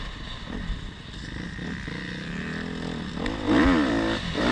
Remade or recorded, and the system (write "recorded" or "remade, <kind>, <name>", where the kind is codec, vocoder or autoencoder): recorded